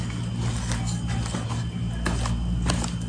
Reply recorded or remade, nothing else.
recorded